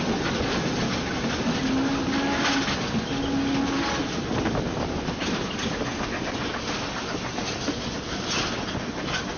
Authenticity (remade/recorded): recorded